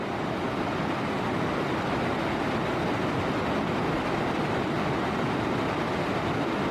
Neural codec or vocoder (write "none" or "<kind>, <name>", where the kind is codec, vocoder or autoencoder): none